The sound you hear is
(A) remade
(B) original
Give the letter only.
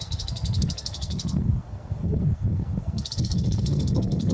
A